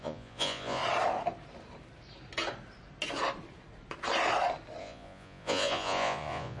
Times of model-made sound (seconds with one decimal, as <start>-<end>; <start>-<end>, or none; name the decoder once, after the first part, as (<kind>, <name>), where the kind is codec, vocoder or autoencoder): 0.0-0.8 (vocoder, Vocos); 4.8-6.6